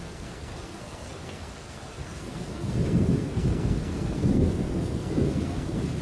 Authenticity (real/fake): fake